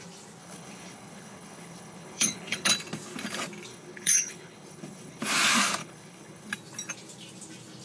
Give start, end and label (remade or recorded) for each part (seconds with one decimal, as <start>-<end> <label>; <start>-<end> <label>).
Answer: 0.0-0.4 recorded; 0.4-2.7 remade; 2.7-3.7 recorded; 3.7-5.2 remade; 5.2-5.8 recorded; 5.8-6.5 remade; 6.5-7.8 recorded